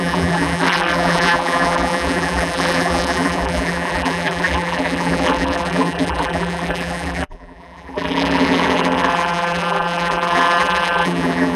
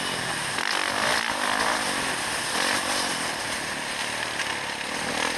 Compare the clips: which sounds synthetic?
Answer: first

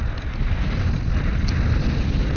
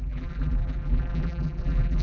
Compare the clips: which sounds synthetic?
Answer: second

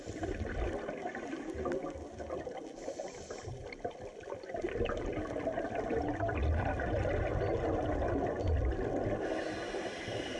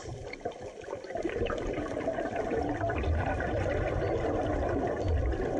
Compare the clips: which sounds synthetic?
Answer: second